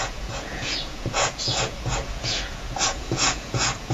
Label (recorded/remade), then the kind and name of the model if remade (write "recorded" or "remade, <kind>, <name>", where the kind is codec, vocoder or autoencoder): remade, vocoder, Vocos